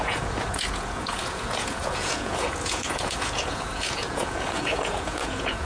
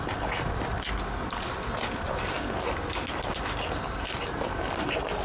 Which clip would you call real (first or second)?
second